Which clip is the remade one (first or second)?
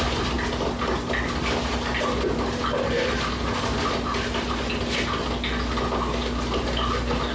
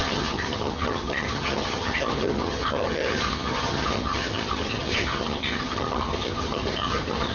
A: second